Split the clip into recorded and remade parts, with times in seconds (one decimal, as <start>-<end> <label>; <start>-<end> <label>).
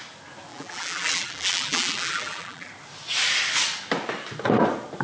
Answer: 0.0-0.5 recorded; 0.5-2.7 remade; 2.7-5.0 recorded